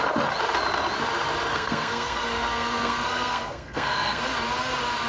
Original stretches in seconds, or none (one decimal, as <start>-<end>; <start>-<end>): 0.0-1.5; 4.2-5.1